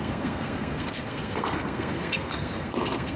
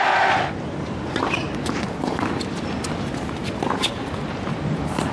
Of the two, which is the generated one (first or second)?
first